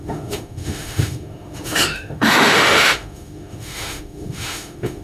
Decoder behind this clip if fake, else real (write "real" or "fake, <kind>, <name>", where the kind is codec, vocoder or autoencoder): fake, autoencoder, DAC-VAE